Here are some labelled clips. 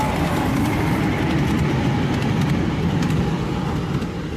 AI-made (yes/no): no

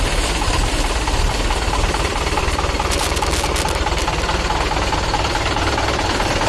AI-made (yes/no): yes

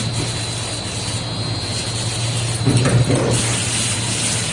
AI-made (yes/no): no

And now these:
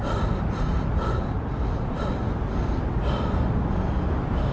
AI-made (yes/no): no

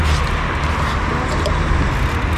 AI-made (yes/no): no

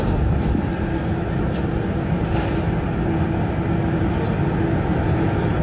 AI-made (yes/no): no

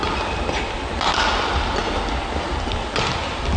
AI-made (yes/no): no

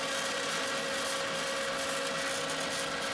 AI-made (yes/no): no